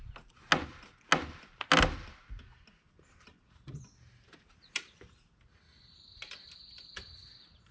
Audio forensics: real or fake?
real